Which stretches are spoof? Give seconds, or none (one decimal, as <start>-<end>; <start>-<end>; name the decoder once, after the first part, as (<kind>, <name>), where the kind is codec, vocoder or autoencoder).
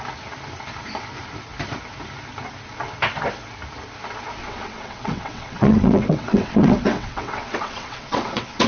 4.4-8.7 (vocoder, WaveNeXt)